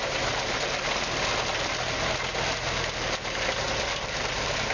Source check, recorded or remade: recorded